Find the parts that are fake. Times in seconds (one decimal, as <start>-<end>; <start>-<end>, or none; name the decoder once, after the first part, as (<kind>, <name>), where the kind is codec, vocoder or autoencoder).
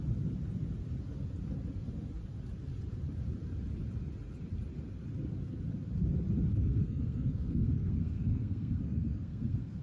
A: 6.5-9.8 (codec, SNAC)